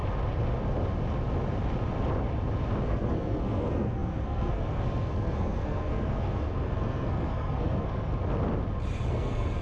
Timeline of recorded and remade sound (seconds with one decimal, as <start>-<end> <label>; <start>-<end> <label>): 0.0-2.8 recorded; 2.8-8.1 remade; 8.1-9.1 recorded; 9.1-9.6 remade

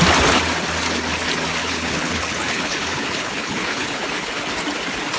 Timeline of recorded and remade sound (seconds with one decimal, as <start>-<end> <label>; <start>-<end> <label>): 0.0-1.6 recorded; 1.6-4.4 remade; 4.4-5.2 recorded

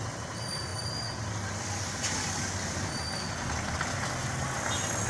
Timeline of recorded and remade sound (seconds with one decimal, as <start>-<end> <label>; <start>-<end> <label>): 0.0-5.1 recorded

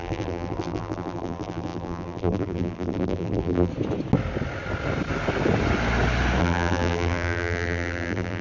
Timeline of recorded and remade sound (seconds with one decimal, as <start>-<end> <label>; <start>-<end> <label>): 0.0-3.7 remade; 3.7-6.4 recorded; 6.4-8.4 remade

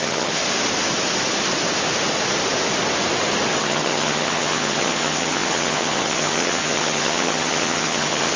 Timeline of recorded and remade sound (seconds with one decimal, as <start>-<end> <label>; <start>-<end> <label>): 0.0-0.4 remade; 0.4-3.6 recorded; 3.6-8.4 remade

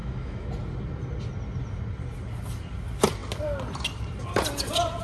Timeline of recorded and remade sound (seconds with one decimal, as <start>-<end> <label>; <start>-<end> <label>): 0.0-0.5 remade; 0.5-5.0 recorded

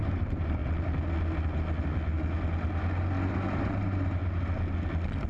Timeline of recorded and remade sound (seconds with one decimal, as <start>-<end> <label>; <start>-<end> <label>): 0.0-0.6 remade; 0.6-3.6 recorded; 3.6-4.2 remade; 4.2-5.3 recorded

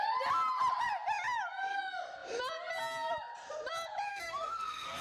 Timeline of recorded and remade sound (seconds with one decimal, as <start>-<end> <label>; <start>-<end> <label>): 0.0-4.1 recorded; 4.1-5.0 remade